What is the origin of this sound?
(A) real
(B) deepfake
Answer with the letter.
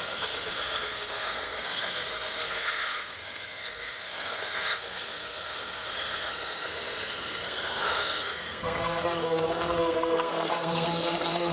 B